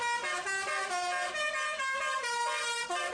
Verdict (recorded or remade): recorded